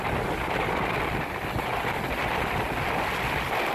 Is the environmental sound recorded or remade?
recorded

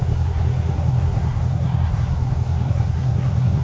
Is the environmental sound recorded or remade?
remade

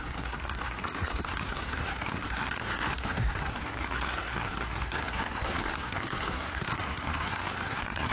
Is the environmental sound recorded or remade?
remade